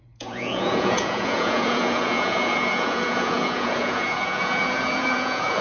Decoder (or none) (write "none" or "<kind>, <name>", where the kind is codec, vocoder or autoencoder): vocoder, Vocos